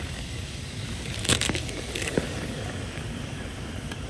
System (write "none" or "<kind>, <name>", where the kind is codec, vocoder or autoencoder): codec, DAC